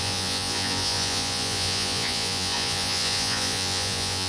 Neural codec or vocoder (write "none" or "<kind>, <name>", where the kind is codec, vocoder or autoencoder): vocoder, Vocos